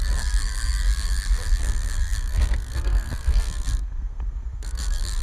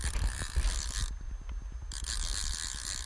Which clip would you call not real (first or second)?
first